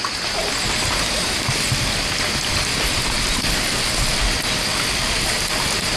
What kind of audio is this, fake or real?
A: real